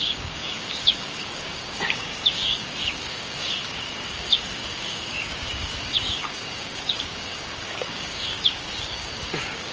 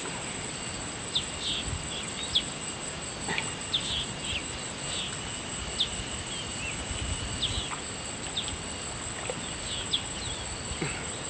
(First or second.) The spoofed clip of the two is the first